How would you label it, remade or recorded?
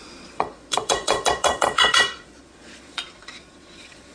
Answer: remade